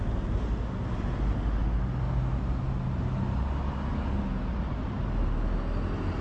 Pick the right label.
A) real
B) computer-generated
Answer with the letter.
A